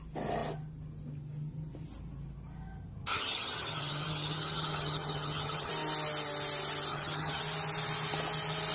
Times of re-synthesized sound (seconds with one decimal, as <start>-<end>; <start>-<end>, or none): 3.1-5.7; 6.9-7.4